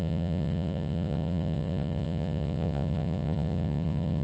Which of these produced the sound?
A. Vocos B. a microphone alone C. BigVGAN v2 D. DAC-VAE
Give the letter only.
A